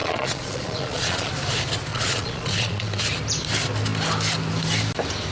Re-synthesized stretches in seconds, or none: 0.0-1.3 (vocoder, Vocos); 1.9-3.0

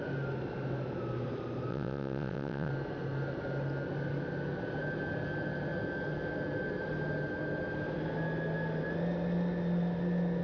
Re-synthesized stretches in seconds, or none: 1.7-2.7 (vocoder, WaveNeXt)

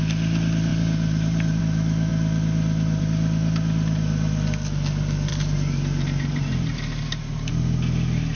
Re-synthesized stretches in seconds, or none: 0.7-1.6 (vocoder, BigVGAN v2); 5.3-7.5

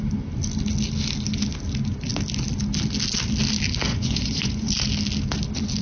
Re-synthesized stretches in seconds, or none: 3.9-4.7 (vocoder, Vocos)

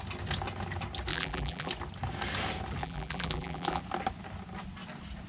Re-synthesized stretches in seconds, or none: 1.1-1.7 (vocoder, BigVGAN v2); 2.8-3.8